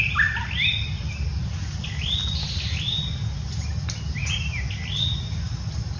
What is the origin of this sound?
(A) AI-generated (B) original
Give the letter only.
B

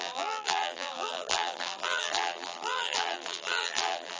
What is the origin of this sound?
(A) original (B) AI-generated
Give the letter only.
B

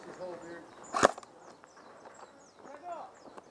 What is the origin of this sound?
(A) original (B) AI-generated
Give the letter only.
A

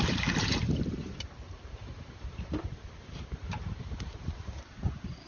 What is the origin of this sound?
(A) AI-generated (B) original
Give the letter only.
A